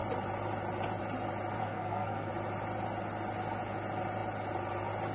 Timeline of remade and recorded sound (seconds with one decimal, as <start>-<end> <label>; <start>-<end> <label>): 0.0-1.6 recorded; 1.6-2.3 remade; 2.3-5.1 recorded